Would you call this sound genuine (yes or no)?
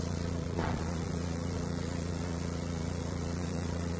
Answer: no